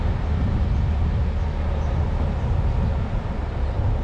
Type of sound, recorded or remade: recorded